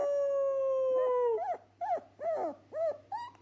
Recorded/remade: recorded